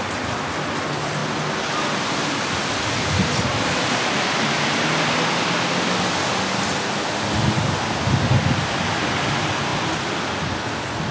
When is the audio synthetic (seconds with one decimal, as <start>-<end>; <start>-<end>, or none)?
none